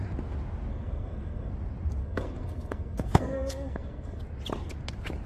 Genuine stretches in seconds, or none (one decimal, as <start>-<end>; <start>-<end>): 0.0-0.7; 1.5-2.0; 4.2-5.3